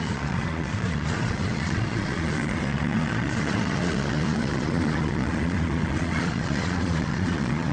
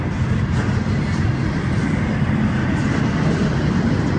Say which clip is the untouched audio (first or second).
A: second